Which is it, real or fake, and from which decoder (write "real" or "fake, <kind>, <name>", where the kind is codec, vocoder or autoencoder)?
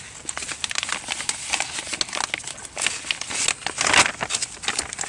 real